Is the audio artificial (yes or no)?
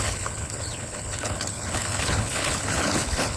yes